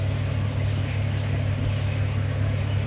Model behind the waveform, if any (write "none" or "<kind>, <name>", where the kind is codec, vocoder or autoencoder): none